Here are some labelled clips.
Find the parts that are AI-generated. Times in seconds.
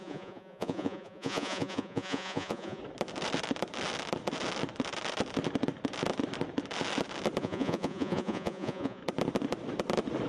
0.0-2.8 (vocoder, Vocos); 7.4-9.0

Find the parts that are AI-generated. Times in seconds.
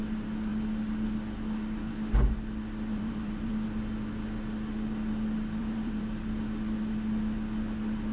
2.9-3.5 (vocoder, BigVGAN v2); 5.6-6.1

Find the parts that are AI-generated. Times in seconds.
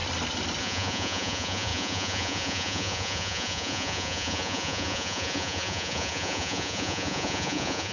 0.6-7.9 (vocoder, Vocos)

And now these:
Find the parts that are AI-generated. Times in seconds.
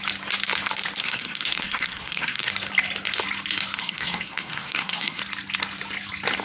1.0-2.5 (codec, SNAC); 3.8-5.2